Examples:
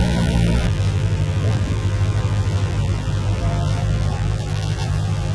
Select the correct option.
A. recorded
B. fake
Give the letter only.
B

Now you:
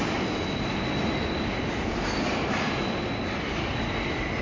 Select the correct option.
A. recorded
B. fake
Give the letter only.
A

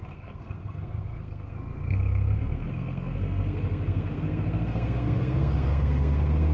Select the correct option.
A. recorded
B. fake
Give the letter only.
B